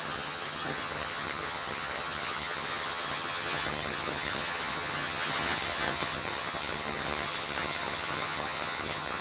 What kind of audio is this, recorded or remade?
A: remade